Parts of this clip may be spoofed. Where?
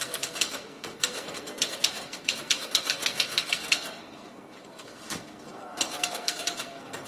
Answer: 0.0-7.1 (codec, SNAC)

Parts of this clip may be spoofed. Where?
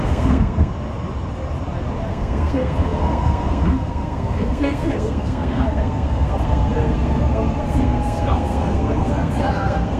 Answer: 0.0-0.7 (codec, SNAC); 2.1-10.0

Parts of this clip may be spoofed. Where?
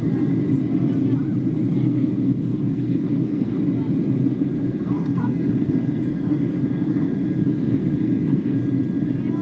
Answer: 1.8-3.6 (codec, SNAC); 4.3-8.6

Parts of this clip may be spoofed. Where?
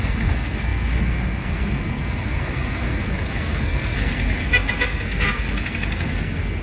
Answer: 0.0-6.6 (codec, SNAC)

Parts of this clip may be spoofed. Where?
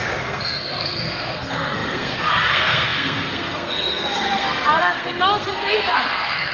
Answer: 0.0-6.5 (codec, SNAC)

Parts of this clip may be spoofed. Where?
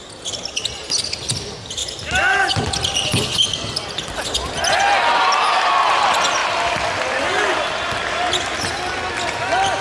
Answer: none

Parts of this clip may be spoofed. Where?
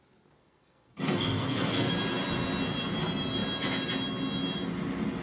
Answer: 0.4-1.9 (codec, SNAC)